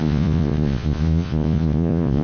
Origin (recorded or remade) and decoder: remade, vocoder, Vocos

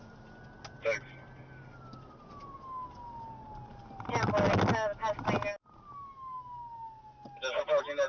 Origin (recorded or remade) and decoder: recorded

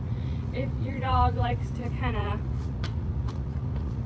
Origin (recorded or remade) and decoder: remade, vocoder, Vocos